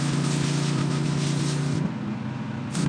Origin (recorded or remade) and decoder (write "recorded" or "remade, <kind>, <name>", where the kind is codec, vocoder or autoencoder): recorded